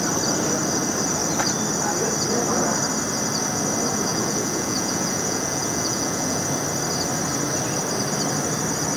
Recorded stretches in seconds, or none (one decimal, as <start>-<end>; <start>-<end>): 0.0-4.1; 6.4-9.0